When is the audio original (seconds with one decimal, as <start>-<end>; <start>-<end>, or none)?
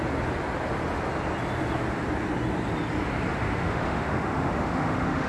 0.0-3.3